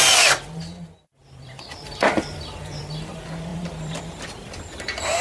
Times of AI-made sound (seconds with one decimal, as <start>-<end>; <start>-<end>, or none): 1.2-2.8; 3.5-4.0